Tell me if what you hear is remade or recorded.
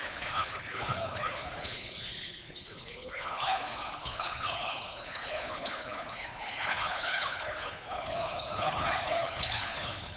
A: remade